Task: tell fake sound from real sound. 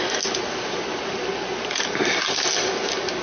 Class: real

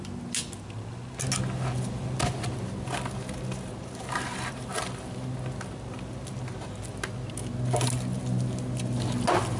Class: real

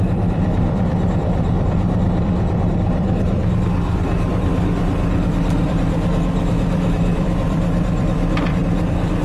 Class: fake